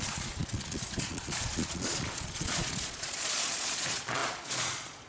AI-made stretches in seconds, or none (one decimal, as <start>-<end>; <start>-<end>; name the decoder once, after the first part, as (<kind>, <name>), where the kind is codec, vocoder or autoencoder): 0.0-5.1 (vocoder, Vocos)